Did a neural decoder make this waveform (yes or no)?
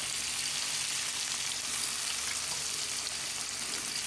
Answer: no